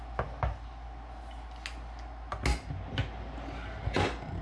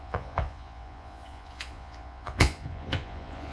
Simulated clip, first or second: second